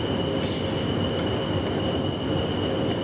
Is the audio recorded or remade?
recorded